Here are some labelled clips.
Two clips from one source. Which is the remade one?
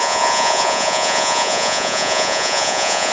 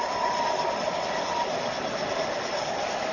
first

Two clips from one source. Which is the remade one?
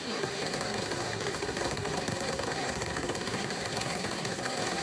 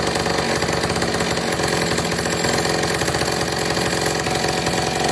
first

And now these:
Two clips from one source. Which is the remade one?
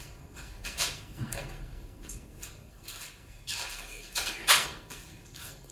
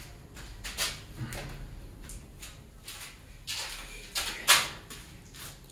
first